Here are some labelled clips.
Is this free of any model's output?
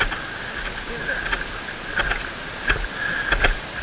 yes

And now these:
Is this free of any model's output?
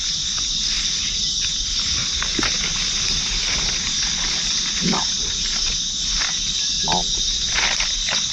yes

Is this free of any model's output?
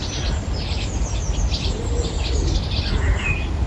yes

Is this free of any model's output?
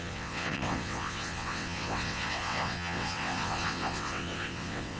no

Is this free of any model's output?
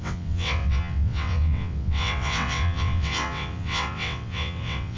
no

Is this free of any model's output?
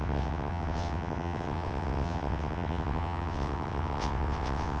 no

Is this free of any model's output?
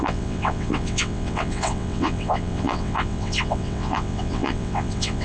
no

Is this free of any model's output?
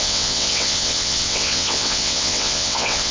no